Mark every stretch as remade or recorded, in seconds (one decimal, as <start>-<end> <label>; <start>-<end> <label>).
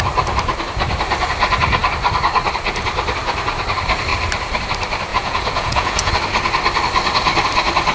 0.0-5.1 recorded; 5.1-6.1 remade; 6.1-7.9 recorded